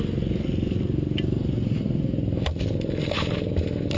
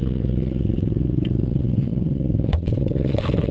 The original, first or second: first